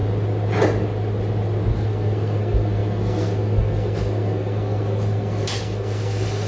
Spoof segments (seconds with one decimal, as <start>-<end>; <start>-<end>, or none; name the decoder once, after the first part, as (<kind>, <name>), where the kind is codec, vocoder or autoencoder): 1.7-6.5 (codec, SNAC)